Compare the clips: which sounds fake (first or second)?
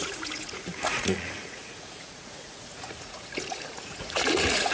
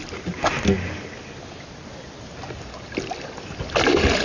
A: first